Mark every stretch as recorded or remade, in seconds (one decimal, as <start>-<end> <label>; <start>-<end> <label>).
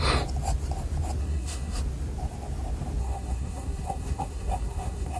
0.0-1.2 recorded; 1.2-1.8 remade; 1.8-3.0 recorded; 3.0-5.2 remade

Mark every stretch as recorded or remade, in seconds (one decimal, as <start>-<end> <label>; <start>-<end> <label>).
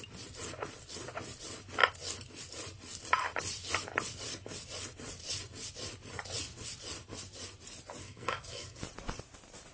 0.0-8.0 recorded; 8.0-8.8 remade; 8.8-9.7 recorded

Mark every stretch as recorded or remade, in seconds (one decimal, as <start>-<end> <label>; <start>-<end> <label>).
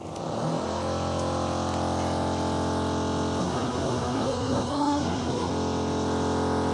0.0-3.4 recorded; 3.4-5.5 remade; 5.5-6.7 recorded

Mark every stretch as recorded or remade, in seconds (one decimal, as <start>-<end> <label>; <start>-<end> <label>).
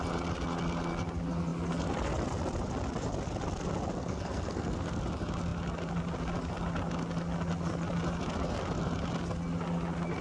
0.0-4.0 recorded; 4.0-5.0 remade; 5.0-10.2 recorded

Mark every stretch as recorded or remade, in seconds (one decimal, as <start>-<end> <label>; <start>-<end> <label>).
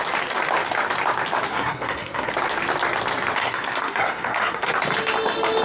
0.0-1.5 recorded; 1.5-2.3 remade; 2.3-3.4 recorded; 3.4-4.8 remade; 4.8-5.6 recorded